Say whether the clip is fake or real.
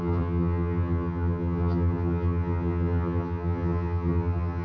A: fake